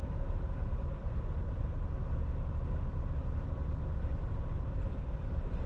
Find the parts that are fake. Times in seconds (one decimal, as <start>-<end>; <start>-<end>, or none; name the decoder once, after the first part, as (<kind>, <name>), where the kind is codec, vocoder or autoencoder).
0.0-2.0 (vocoder, BigVGAN v2); 4.0-5.7